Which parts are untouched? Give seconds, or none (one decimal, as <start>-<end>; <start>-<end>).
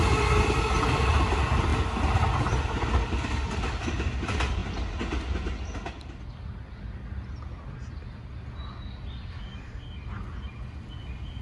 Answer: 0.0-11.4